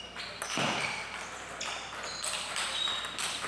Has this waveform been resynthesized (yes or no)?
no